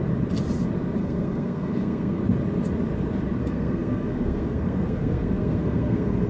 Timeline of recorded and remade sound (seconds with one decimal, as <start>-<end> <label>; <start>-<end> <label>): 0.0-1.0 recorded; 1.0-2.2 remade; 2.2-3.4 recorded; 3.4-6.3 remade